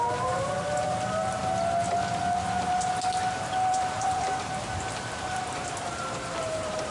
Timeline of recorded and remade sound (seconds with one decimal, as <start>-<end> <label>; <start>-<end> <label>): 0.0-1.4 remade; 1.4-3.7 recorded; 3.7-6.9 remade